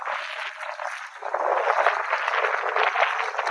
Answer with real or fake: real